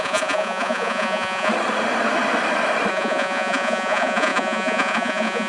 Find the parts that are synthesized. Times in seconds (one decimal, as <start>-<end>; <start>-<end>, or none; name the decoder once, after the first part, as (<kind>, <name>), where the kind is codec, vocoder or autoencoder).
0.0-1.5 (vocoder, Vocos); 2.9-5.5